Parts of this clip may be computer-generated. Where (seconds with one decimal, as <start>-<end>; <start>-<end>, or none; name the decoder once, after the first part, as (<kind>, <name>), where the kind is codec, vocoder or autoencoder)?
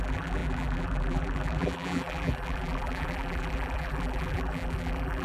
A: 0.0-5.2 (vocoder, BigVGAN v2)